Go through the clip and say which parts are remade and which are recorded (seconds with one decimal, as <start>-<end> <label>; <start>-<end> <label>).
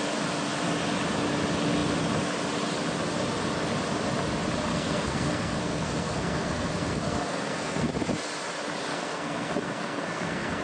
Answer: 0.0-4.7 recorded; 4.7-7.9 remade; 7.9-8.9 recorded; 8.9-10.6 remade